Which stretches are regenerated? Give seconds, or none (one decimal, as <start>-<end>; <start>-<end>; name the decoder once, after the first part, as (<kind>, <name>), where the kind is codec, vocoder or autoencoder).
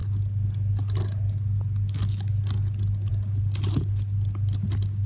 none